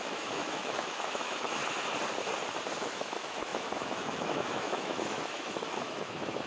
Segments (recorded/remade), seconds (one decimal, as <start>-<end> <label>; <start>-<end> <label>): 0.0-1.6 remade; 1.6-2.8 recorded; 2.8-6.5 remade